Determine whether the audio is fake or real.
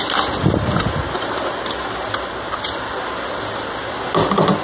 real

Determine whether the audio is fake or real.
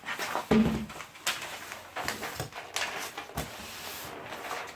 real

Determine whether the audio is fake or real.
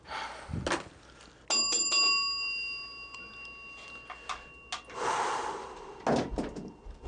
real